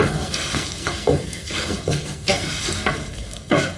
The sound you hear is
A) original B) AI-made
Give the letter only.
B